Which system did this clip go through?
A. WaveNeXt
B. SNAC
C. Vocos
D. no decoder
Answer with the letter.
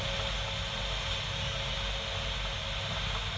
D